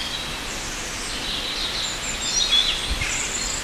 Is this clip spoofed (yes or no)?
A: no